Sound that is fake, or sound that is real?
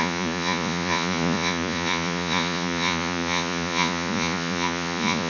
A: fake